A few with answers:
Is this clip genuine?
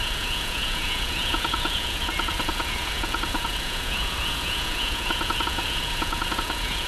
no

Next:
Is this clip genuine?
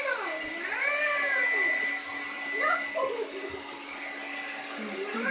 yes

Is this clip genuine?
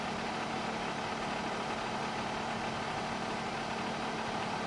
yes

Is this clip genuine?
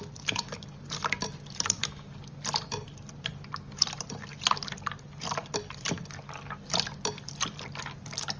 yes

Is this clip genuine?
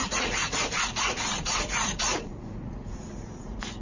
no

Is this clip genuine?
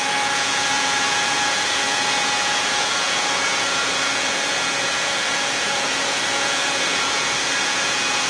no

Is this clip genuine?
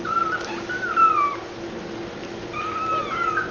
yes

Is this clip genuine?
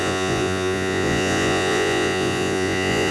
no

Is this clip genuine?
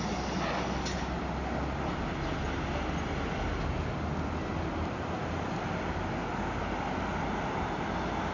yes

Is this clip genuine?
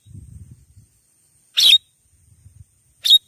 yes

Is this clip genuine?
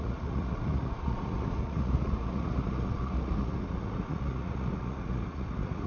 no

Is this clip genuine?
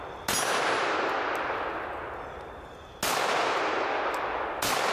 yes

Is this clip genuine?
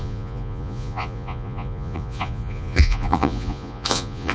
no